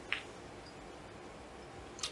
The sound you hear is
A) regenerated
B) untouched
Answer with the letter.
B